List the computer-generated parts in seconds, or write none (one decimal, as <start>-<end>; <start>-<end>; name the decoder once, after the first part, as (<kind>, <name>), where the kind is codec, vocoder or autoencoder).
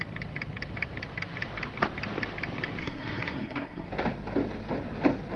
2.8-3.9 (codec, SNAC)